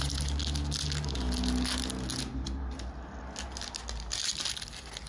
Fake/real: real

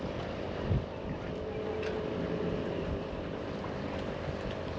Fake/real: real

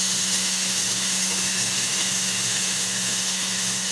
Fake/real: fake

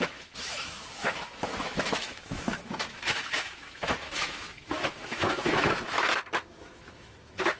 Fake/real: fake